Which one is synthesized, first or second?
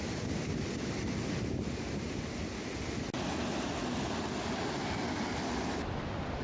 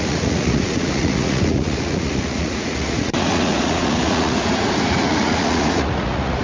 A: second